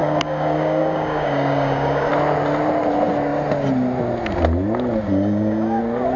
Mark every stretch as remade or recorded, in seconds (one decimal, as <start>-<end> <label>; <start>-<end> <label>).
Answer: 0.0-2.1 remade; 2.1-5.1 recorded; 5.1-5.8 remade; 5.8-6.2 recorded